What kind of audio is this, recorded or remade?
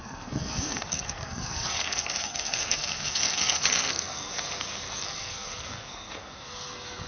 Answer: remade